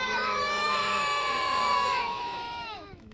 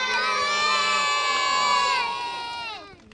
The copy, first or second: first